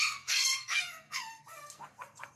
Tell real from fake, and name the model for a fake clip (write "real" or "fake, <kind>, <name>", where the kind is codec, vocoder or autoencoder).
fake, codec, SNAC